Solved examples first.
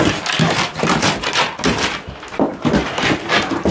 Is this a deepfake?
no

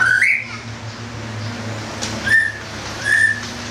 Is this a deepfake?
no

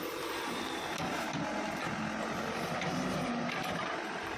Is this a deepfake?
no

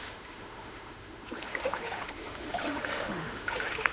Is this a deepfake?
yes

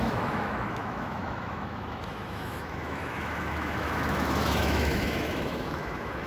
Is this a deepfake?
yes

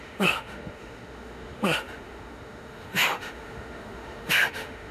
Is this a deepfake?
yes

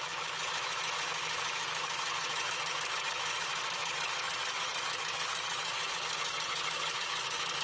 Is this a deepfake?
yes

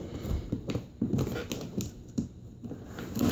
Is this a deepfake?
no